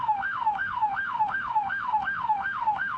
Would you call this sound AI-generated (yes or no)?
yes